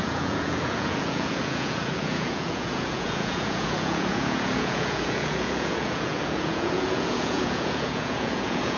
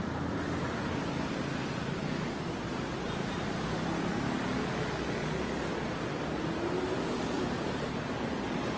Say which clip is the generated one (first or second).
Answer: first